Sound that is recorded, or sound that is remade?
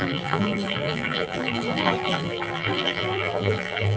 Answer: remade